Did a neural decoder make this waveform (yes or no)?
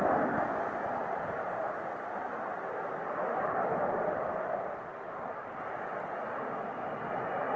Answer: no